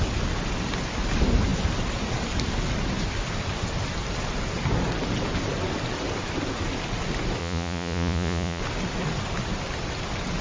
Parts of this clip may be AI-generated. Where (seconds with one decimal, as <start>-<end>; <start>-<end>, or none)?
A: 7.4-8.6